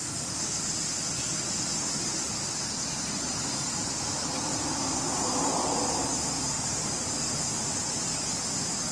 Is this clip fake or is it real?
real